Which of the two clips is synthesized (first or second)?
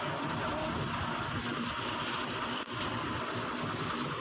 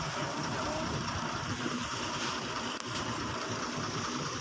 second